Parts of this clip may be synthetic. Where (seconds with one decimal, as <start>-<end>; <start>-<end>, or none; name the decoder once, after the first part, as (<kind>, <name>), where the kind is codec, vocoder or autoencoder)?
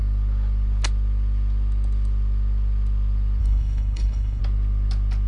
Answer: 3.4-4.4 (codec, HILCodec)